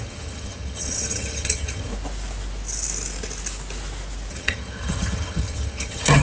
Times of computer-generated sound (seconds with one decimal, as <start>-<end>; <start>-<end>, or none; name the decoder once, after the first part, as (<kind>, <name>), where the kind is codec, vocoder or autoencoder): 0.0-1.9 (vocoder, HiFi-GAN); 4.3-6.2